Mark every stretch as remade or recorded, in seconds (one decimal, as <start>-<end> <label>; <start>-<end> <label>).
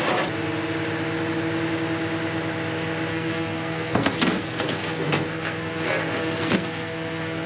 0.0-3.1 recorded; 3.1-7.5 remade